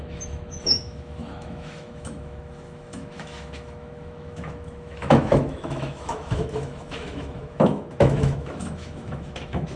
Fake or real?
fake